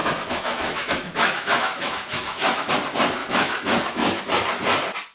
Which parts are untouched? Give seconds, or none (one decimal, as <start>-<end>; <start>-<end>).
2.7-3.2; 4.2-5.1